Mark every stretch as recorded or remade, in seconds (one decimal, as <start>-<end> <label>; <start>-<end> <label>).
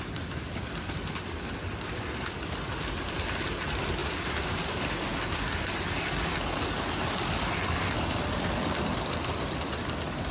0.0-10.3 recorded